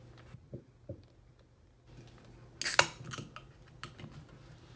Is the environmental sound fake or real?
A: real